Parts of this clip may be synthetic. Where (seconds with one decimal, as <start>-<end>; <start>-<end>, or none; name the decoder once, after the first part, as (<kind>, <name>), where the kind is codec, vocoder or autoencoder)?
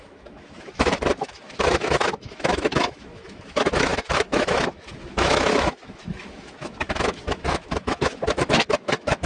0.0-9.3 (autoencoder, DAC-VAE)